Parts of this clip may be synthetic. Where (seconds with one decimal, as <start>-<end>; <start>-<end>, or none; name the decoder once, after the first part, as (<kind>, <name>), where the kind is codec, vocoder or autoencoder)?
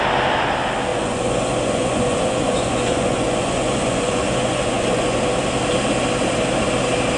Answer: 0.9-5.2 (vocoder, Vocos)